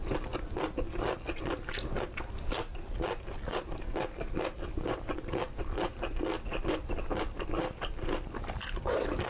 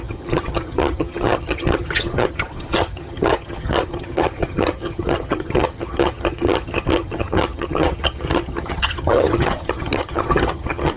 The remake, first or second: second